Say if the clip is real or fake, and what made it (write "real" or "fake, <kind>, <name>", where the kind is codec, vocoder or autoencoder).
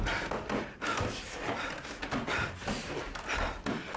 real